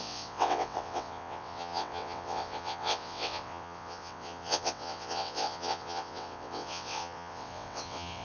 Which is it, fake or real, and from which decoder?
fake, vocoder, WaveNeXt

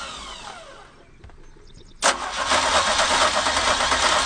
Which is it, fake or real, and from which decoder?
real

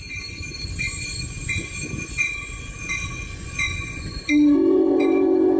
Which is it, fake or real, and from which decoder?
fake, vocoder, Vocos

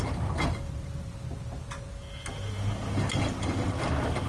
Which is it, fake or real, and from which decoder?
real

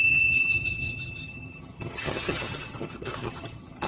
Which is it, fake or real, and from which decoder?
fake, vocoder, HiFi-GAN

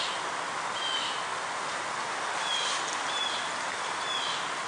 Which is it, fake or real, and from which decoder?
real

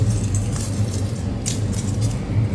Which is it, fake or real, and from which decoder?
real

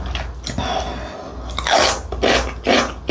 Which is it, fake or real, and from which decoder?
real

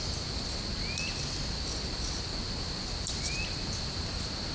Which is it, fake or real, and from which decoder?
real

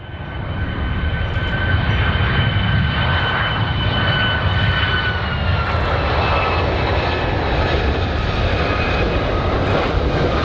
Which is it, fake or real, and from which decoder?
real